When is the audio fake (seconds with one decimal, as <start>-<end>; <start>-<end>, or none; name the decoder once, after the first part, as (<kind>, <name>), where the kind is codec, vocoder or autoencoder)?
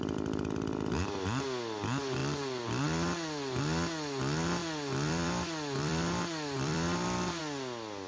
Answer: 2.2-3.6 (vocoder, BigVGAN v2); 4.6-7.4